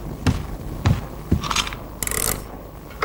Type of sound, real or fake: real